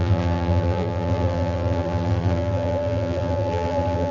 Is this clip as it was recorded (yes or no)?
no